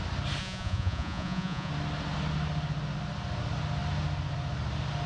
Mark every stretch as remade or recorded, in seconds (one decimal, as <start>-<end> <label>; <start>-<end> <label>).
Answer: 0.0-0.4 recorded; 0.4-1.7 remade; 1.7-5.1 recorded